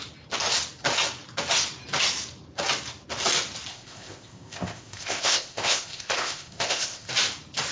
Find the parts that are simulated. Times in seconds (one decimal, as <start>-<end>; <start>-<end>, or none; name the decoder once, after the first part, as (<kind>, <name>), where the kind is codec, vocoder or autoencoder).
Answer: 3.7-7.1 (codec, ZipCodec)